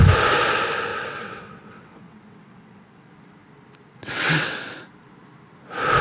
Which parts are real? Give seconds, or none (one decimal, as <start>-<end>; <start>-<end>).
0.0-0.9; 3.1-3.9; 4.7-6.0